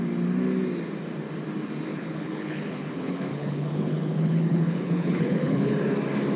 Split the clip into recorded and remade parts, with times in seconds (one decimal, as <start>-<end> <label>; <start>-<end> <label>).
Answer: 0.0-1.9 recorded; 1.9-5.7 remade; 5.7-6.4 recorded